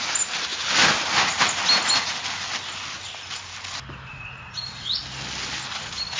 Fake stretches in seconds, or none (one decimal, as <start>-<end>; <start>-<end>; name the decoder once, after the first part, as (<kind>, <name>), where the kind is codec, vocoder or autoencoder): 4.1-5.0 (vocoder, Vocos); 5.7-6.2